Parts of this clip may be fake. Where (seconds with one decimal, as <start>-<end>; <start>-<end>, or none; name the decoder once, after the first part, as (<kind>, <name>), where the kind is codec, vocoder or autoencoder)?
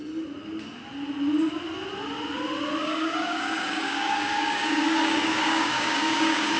2.8-6.6 (codec, DAC)